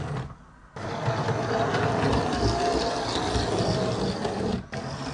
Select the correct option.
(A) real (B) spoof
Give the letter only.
A